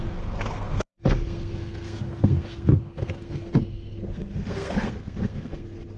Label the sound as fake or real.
fake